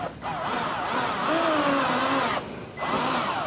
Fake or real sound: real